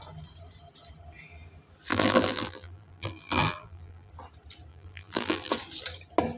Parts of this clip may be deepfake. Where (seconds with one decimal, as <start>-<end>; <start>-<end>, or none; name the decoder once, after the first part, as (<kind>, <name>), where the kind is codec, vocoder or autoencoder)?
1.9-4.1 (vocoder, BigVGAN v2); 4.7-5.5